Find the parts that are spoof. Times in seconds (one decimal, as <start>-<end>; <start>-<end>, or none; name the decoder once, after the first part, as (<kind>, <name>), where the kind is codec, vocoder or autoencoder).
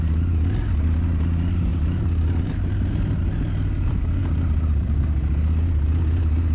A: 1.7-3.2 (vocoder, BigVGAN v2); 4.2-5.0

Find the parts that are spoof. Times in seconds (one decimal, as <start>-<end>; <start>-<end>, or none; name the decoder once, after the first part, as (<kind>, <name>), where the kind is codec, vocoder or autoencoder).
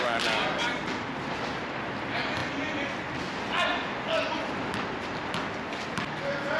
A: none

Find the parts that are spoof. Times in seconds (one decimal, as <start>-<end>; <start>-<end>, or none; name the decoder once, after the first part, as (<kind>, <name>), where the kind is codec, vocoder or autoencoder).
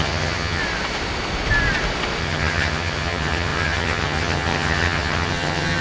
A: 0.0-0.6 (vocoder, HiFi-GAN); 2.2-5.8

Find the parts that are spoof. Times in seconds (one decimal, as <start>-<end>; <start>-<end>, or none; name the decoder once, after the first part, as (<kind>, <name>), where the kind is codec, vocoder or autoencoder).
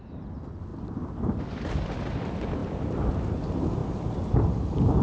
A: 0.7-2.1 (vocoder, BigVGAN v2); 2.6-3.1; 3.8-5.0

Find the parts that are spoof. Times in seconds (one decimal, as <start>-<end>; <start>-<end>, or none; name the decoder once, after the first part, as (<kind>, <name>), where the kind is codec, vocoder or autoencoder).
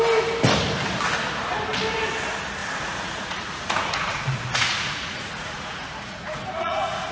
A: 2.6-7.1 (vocoder, Vocos)